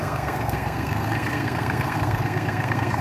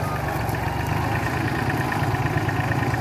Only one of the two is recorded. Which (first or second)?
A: second